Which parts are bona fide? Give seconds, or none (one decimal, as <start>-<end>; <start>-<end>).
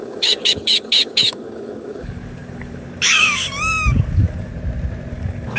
4.5-5.1